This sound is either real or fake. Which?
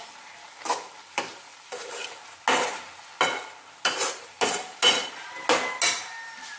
real